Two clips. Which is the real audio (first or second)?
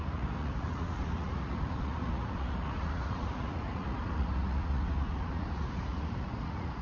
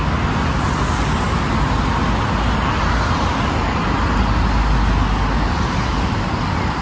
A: second